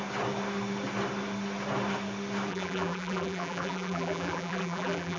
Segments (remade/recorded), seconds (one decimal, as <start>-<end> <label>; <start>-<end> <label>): 0.0-2.5 recorded; 2.5-5.2 remade